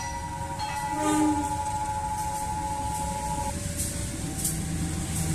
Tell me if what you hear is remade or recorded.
recorded